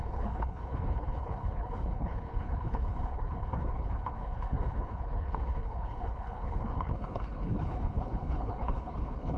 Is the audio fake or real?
fake